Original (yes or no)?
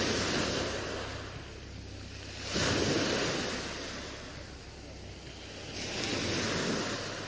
yes